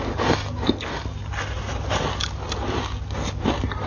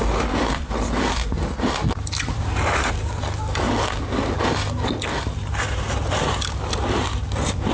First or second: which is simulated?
second